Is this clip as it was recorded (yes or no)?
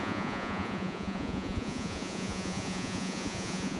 no